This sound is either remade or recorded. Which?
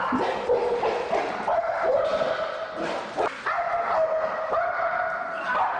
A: recorded